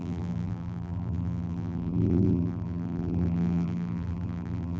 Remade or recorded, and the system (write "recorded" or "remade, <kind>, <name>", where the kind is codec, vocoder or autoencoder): remade, vocoder, BigVGAN v2